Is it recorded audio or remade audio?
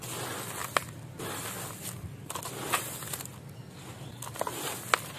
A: recorded